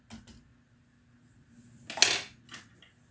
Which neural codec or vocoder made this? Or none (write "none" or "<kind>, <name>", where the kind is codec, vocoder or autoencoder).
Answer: none